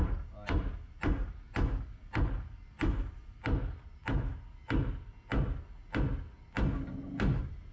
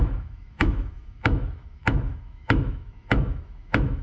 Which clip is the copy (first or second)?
second